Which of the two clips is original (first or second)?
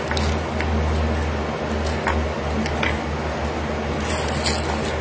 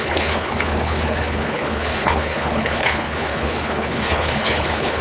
first